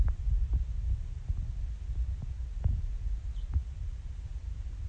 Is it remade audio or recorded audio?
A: recorded